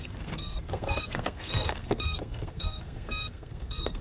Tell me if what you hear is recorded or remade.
remade